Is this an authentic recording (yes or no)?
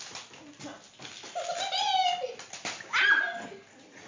yes